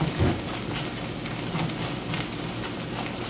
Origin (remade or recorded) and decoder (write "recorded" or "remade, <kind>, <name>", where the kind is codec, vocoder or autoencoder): recorded